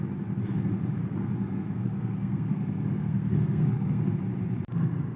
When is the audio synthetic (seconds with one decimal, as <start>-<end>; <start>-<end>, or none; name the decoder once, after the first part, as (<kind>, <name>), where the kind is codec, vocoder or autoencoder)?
1.0-4.1 (codec, SNAC)